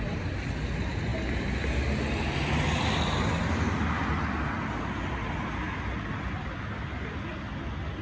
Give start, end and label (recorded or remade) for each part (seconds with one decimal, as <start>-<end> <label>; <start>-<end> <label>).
0.0-8.0 recorded